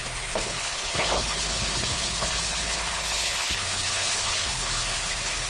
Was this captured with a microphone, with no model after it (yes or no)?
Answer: no